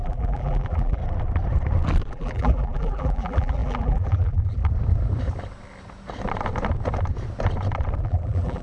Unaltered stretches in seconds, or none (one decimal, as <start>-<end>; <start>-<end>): 1.0-2.1; 4.6-8.0